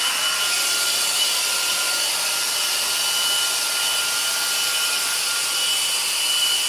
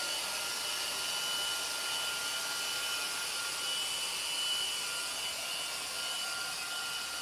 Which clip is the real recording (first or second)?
second